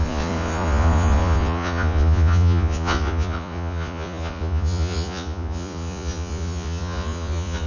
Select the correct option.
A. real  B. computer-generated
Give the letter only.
B